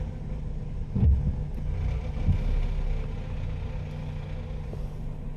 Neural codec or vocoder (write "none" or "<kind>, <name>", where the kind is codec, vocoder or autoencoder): none